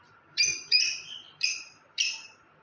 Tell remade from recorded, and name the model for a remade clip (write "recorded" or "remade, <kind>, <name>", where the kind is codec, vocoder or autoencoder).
remade, vocoder, BigVGAN v2